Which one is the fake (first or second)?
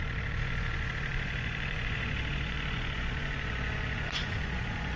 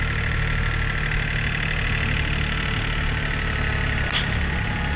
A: first